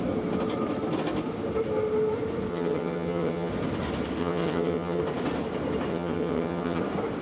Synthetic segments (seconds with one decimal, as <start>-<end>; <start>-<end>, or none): 2.5-3.5; 4.2-5.0; 5.9-6.8